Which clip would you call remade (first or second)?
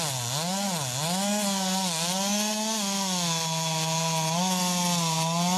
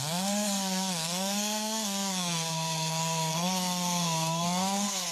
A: second